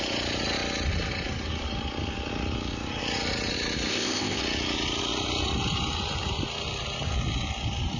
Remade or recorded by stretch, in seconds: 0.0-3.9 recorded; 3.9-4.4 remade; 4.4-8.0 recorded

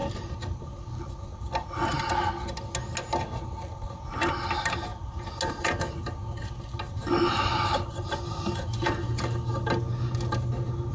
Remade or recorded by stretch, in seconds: 0.0-0.6 remade; 0.6-10.9 recorded

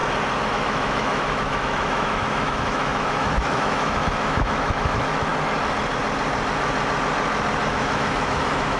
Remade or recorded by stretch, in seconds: 0.0-0.5 recorded; 0.5-5.3 remade; 5.3-7.7 recorded; 7.7-8.8 remade

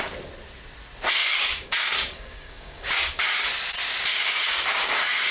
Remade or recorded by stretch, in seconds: 0.0-1.2 recorded; 1.2-3.5 remade; 3.5-4.1 recorded; 4.1-5.3 remade

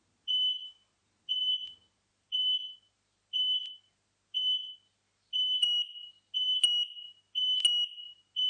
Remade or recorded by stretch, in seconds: 0.0-8.5 recorded